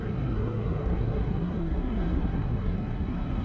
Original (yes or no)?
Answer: no